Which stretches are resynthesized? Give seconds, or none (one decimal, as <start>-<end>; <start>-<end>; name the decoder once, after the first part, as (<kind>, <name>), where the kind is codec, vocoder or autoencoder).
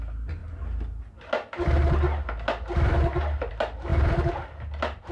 none